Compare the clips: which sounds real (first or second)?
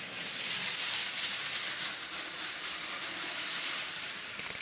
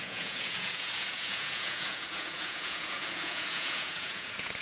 first